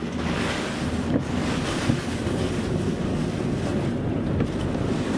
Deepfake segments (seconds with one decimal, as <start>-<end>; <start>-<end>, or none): 0.0-3.1; 4.6-5.2